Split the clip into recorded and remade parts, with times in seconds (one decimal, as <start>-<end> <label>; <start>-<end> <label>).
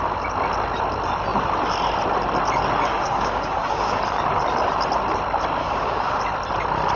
0.0-2.9 recorded; 2.9-4.0 remade; 4.0-5.6 recorded; 5.6-6.2 remade; 6.2-7.0 recorded